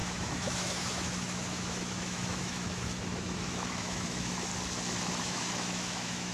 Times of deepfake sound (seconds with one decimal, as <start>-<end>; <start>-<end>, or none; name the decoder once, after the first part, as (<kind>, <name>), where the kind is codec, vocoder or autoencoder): 0.0-4.5 (autoencoder, DAC-VAE); 5.2-6.3